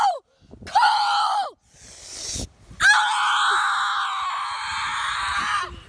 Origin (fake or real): real